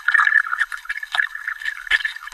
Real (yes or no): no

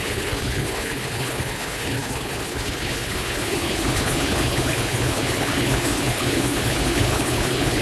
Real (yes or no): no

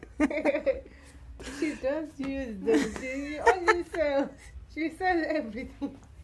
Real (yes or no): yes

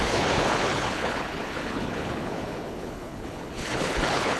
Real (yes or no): no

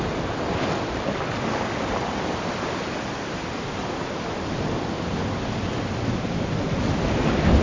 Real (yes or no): yes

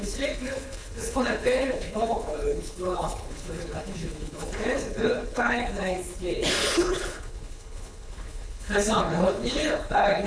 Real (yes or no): no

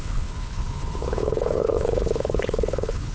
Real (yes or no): no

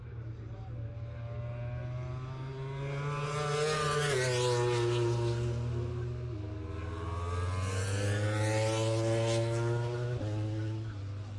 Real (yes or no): yes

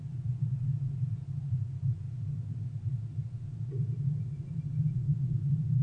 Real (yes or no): yes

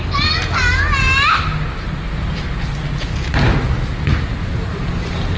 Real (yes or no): yes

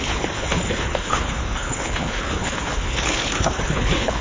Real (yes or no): no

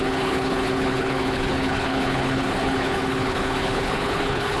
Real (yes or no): no